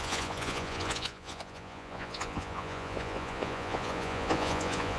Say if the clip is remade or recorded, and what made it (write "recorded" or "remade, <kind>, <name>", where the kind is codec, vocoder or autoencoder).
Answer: remade, vocoder, Vocos